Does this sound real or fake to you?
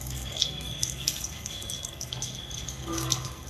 fake